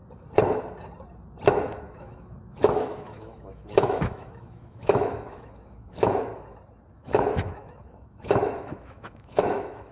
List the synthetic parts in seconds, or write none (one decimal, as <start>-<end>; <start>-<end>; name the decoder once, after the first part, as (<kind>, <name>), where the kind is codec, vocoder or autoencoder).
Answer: 1.5-6.3 (autoencoder, DAC-VAE); 6.9-9.9